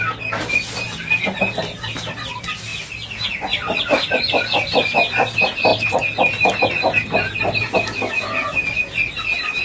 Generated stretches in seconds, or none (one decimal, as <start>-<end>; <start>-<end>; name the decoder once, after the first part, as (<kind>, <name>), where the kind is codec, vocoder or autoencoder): none